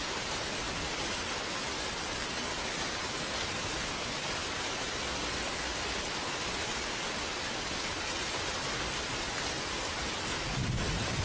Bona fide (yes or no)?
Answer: yes